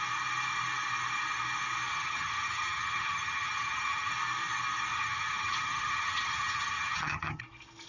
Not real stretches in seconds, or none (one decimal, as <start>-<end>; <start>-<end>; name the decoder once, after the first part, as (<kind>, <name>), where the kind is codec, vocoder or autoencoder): 1.9-4.1 (vocoder, HiFi-GAN); 4.9-7.4